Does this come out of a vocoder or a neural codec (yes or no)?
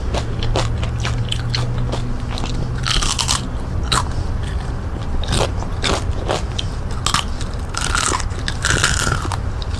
no